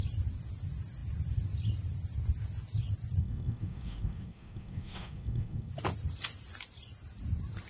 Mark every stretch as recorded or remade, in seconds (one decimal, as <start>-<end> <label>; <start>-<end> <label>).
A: 0.0-3.2 recorded; 3.2-5.7 remade; 5.7-7.7 recorded